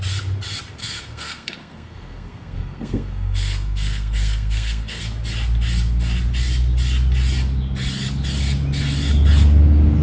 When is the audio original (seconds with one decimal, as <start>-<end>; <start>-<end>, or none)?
0.0-0.8; 5.0-10.0